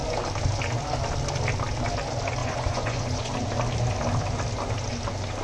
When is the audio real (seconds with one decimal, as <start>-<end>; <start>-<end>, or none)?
0.0-2.4; 3.3-5.4